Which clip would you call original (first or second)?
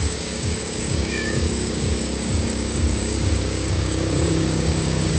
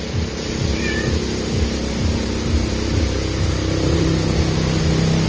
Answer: second